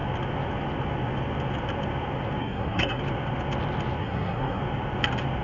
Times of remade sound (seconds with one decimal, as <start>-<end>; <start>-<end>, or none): 2.4-3.0; 4.0-4.6